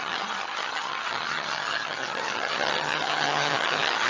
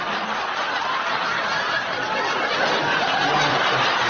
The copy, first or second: first